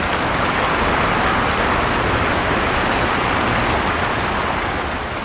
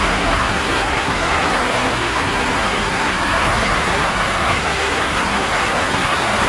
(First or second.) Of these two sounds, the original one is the first